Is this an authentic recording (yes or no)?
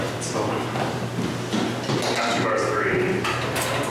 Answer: yes